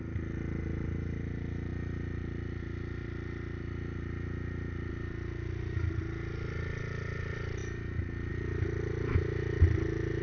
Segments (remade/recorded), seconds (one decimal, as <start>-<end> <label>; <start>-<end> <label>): 0.0-10.2 recorded